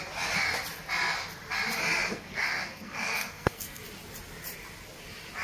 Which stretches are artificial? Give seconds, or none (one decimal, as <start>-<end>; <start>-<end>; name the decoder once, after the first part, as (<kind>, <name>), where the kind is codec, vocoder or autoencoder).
2.1-3.8 (codec, SNAC)